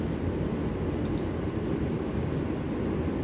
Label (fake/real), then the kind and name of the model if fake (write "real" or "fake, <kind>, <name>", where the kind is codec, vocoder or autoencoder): real